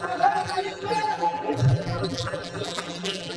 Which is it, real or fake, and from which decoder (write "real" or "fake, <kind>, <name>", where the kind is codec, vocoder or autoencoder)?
fake, vocoder, BigVGAN v2